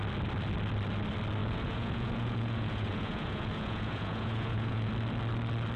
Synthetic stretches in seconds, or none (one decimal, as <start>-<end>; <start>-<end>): 1.4-4.9